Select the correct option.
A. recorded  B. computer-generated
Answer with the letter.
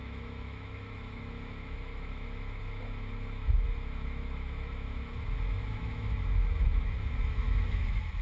B